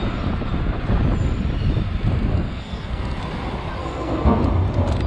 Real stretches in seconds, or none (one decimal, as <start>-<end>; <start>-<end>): 0.0-2.3; 3.2-3.8; 4.4-5.1